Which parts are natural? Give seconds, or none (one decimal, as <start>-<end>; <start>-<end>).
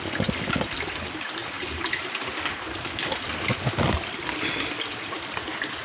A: none